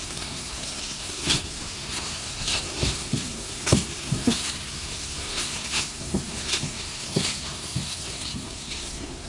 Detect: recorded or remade remade